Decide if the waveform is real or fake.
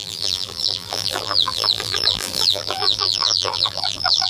fake